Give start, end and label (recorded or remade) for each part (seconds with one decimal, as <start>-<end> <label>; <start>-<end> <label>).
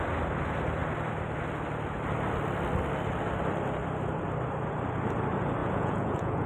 0.0-5.6 recorded; 5.6-6.5 remade